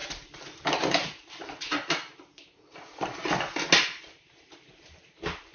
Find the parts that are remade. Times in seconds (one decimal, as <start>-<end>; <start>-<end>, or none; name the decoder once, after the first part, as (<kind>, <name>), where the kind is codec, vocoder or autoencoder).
0.0-3.2 (vocoder, BigVGAN v2)